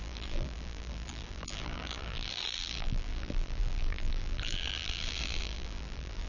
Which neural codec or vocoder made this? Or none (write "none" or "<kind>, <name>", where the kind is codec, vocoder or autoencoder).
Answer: vocoder, BigVGAN v2